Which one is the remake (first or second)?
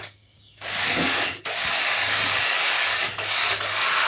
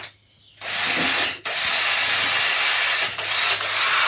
first